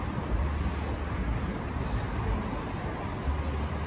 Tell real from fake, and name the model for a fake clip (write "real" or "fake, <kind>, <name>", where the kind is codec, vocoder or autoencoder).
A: real